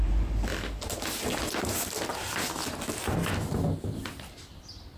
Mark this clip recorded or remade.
recorded